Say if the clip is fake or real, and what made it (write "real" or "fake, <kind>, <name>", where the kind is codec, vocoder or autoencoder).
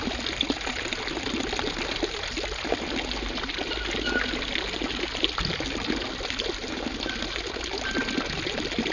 real